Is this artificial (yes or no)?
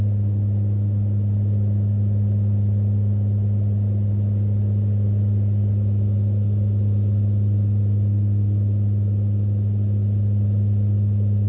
no